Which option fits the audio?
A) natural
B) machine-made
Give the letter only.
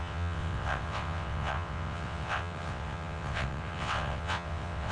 B